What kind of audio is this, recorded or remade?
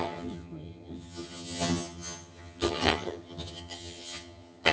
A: remade